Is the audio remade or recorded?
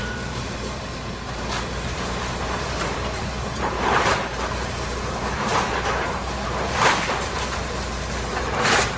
remade